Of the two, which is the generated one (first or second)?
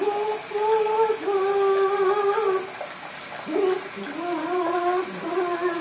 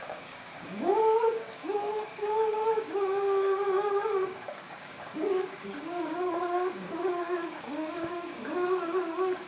second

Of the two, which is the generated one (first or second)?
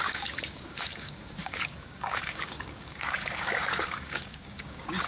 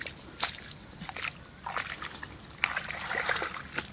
first